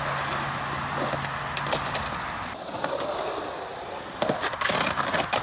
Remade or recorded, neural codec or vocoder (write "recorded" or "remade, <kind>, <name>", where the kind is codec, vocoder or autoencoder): recorded